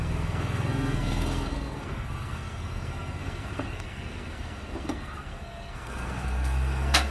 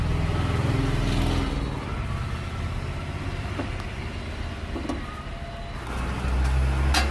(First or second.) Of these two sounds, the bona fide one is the second